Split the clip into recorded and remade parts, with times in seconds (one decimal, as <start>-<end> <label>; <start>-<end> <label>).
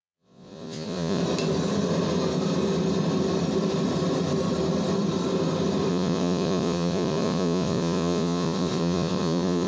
0.0-1.2 remade; 1.2-5.9 recorded; 5.9-9.7 remade